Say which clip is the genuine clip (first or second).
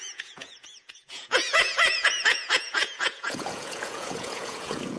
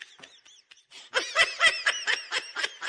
second